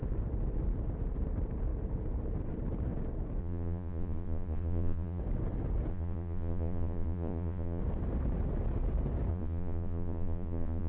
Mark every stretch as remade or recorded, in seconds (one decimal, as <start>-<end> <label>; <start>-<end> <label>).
0.0-3.4 recorded; 3.4-5.2 remade; 5.2-5.9 recorded; 5.9-7.8 remade; 7.8-9.3 recorded; 9.3-10.9 remade